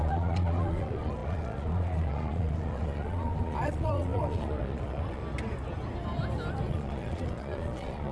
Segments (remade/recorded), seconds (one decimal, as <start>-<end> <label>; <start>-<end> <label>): 0.0-5.2 remade; 5.2-6.7 recorded; 6.7-8.1 remade